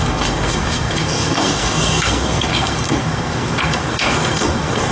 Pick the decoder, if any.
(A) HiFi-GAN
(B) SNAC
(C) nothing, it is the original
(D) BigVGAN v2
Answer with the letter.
B